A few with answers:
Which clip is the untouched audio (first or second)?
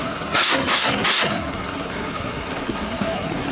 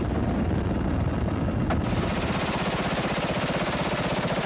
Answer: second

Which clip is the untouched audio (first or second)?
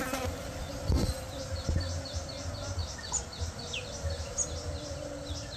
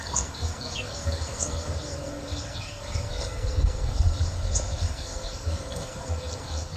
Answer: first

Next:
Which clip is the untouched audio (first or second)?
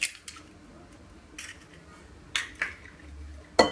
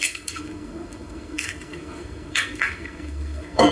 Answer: first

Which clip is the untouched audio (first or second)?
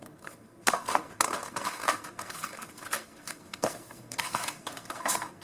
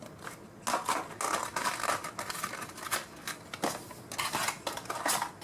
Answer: second